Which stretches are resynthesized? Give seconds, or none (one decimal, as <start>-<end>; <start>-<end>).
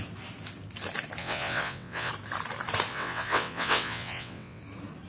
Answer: 1.2-2.1; 2.9-4.6